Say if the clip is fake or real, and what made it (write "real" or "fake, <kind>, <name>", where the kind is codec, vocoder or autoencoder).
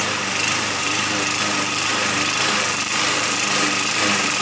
fake, vocoder, BigVGAN v2